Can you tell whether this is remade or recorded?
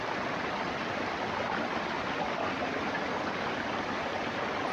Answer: recorded